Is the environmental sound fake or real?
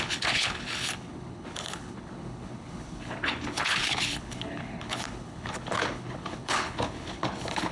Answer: fake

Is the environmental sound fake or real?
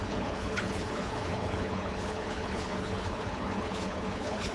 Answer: fake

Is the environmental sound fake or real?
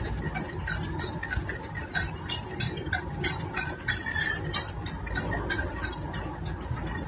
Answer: real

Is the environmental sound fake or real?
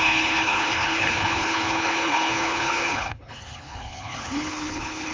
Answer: fake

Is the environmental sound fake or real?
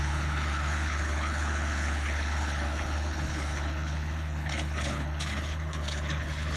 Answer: fake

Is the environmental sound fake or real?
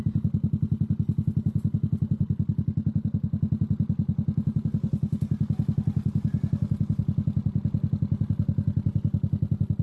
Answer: real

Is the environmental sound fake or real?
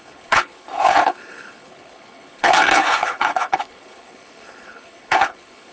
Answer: fake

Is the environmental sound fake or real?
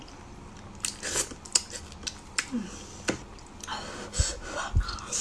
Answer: real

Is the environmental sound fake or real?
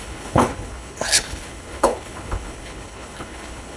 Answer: fake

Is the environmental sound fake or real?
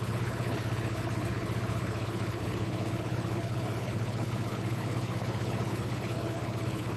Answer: fake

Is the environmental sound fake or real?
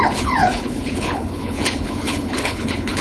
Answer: fake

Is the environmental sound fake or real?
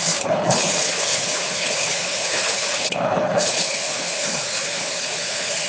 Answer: fake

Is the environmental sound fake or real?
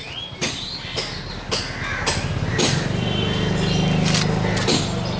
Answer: real